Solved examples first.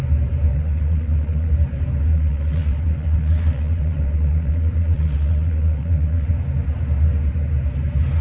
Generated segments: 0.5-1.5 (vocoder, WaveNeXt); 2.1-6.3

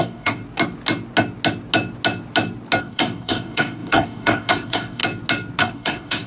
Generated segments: 0.0-0.4 (codec, DAC); 2.8-5.0; 5.6-6.3

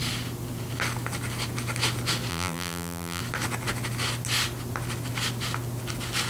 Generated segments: 2.3-3.2 (vocoder, BigVGAN v2)

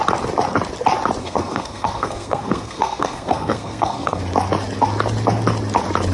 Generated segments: 1.2-4.2 (codec, SNAC)

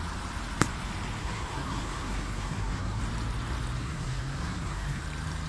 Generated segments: 1.2-3.0 (codec, SNAC); 3.8-5.0

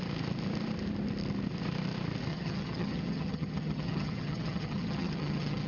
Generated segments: 2.3-5.7 (vocoder, HiFi-GAN)